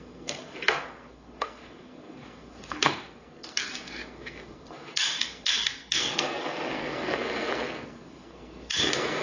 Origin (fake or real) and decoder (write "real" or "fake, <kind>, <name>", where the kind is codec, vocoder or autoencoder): fake, codec, SNAC